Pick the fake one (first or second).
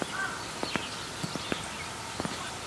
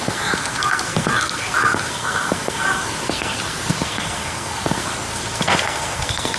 second